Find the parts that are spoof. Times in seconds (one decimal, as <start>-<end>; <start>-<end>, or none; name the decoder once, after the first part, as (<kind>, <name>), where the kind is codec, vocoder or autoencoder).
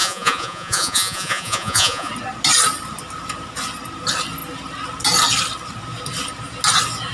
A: 0.0-2.1 (vocoder, Vocos)